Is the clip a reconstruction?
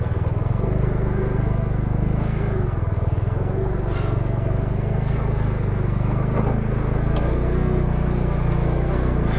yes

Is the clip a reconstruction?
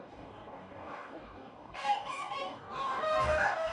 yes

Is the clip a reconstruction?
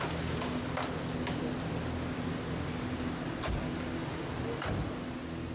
no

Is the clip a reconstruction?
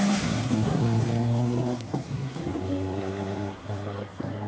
yes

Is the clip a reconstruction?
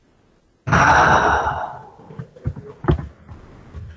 no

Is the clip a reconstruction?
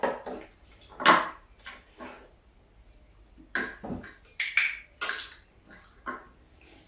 no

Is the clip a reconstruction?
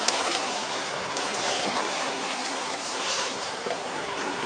yes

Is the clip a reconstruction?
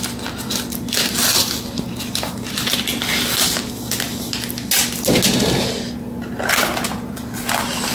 no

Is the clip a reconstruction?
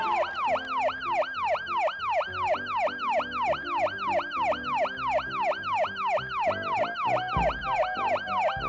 no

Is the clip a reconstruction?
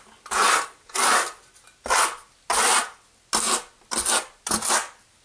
no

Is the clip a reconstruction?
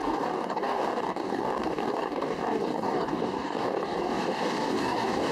yes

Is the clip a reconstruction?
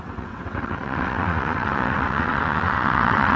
yes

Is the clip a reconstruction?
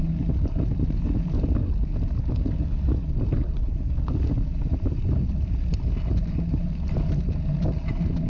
no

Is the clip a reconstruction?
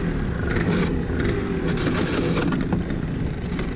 no